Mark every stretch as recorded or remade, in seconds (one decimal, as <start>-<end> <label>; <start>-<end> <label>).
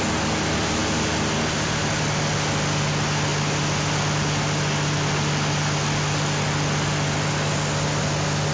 0.0-8.5 recorded